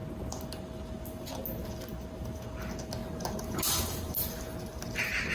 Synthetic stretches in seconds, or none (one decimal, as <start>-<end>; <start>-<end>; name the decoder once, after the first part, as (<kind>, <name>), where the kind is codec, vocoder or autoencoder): none